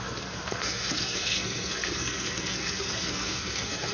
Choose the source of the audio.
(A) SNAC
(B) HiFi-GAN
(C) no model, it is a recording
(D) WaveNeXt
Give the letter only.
A